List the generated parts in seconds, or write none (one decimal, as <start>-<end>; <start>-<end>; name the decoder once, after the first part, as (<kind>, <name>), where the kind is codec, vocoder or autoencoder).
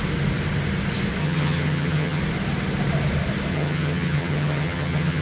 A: 1.2-2.2 (vocoder, HiFi-GAN); 3.5-5.2